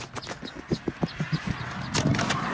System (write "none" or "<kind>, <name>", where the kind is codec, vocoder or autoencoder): none